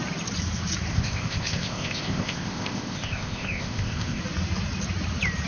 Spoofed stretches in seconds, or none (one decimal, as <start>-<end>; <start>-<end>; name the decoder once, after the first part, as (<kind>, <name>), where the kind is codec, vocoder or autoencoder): 0.9-4.2 (codec, ZipCodec)